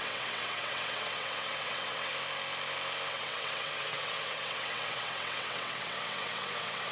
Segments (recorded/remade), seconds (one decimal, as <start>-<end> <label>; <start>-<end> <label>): 0.0-2.1 remade; 2.1-3.1 recorded; 3.1-6.9 remade